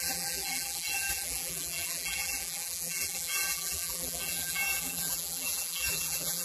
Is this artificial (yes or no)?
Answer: yes